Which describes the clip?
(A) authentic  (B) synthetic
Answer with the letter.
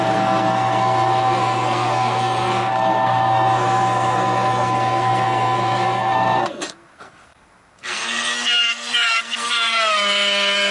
B